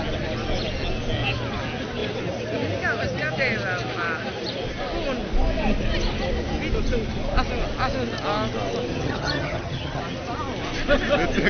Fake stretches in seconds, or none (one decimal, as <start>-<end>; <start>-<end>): 8.9-10.0